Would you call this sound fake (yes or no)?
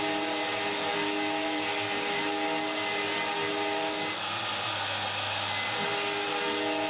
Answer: no